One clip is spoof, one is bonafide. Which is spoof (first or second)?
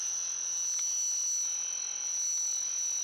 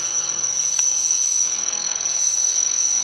second